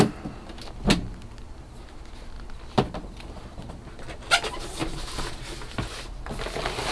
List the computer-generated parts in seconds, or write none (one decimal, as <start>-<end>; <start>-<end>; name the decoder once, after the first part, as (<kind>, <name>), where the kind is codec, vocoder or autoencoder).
none